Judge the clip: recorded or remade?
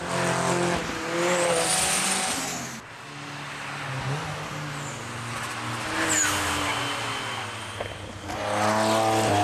recorded